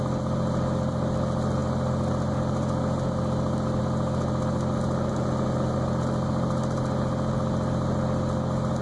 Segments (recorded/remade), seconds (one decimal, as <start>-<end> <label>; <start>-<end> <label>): 0.0-8.8 recorded